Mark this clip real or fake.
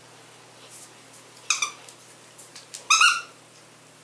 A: real